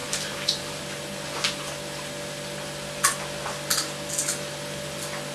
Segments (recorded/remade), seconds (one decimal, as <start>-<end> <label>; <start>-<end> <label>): 0.0-0.8 remade; 0.8-5.3 recorded